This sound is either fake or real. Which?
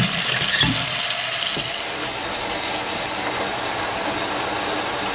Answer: real